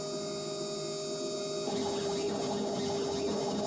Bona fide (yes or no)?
yes